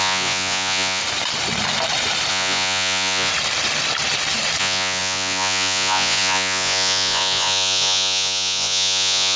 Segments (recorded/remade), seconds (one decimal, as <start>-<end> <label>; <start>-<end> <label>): 0.0-1.0 remade; 1.0-2.3 recorded; 2.3-3.3 remade; 3.3-4.6 recorded; 4.6-9.4 remade